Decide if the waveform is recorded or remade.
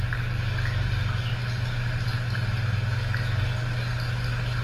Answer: recorded